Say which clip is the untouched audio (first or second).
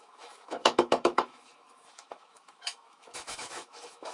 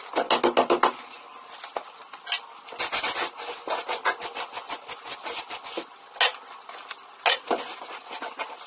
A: second